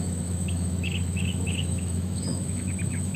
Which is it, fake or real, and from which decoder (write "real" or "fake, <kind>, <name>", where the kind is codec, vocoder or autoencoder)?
fake, autoencoder, DAC-VAE